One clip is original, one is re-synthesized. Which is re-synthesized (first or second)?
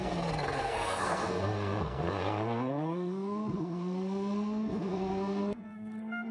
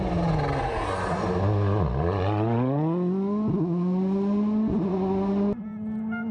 first